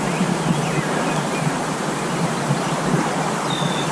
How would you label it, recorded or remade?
recorded